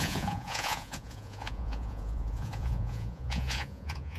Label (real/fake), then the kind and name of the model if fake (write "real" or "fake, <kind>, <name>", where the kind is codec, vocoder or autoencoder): fake, vocoder, Vocos